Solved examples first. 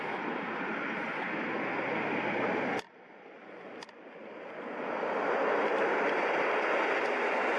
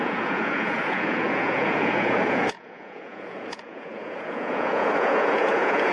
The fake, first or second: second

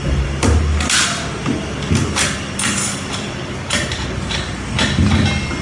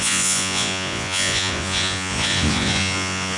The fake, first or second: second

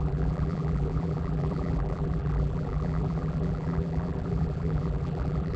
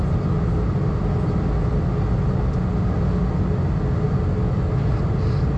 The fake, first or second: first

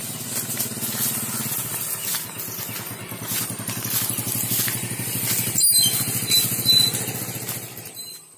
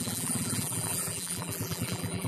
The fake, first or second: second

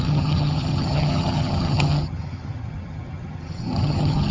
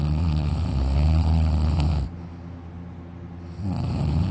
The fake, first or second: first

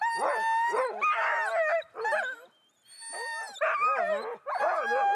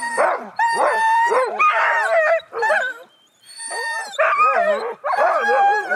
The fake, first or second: second